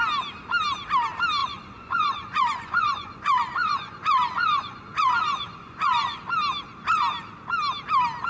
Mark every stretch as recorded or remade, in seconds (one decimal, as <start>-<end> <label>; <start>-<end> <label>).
0.0-1.4 recorded; 1.4-6.2 remade; 6.2-8.3 recorded